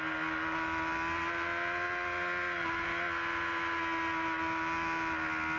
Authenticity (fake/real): real